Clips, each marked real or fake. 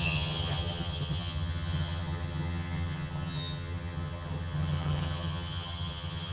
fake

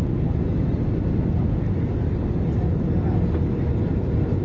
real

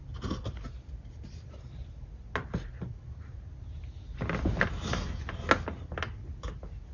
real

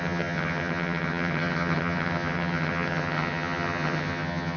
fake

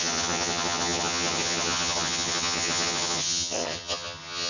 fake